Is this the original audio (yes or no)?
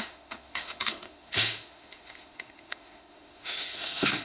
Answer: no